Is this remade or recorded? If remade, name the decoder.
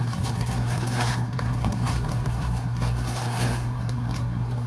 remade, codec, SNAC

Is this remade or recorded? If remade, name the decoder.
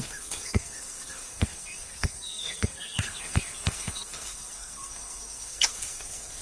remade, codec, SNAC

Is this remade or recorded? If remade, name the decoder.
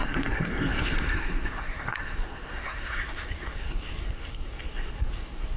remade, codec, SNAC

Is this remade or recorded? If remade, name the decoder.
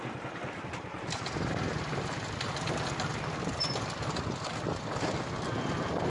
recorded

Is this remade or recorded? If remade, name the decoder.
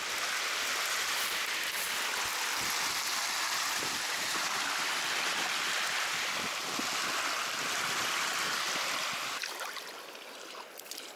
recorded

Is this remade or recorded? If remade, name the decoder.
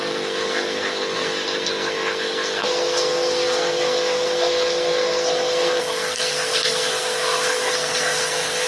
remade, codec, SNAC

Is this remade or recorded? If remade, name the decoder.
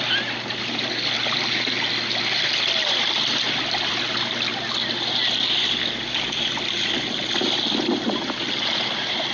recorded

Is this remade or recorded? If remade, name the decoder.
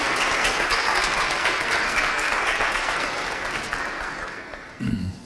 remade, codec, SNAC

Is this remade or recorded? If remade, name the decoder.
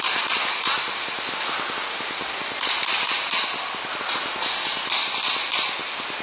recorded